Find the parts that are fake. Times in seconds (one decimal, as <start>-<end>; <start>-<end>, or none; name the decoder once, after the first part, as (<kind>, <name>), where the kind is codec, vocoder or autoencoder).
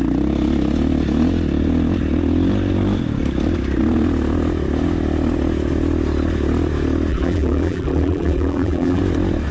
7.1-9.0 (vocoder, BigVGAN v2)